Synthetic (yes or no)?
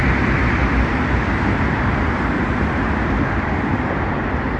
yes